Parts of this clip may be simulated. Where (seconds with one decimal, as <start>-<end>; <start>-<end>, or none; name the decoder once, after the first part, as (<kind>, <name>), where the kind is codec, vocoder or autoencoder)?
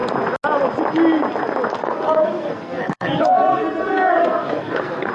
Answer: 1.8-5.1 (codec, SNAC)